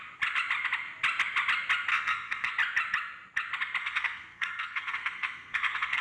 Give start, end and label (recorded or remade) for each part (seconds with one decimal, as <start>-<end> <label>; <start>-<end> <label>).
0.0-1.9 recorded; 1.9-2.5 remade; 2.5-3.8 recorded; 3.8-6.0 remade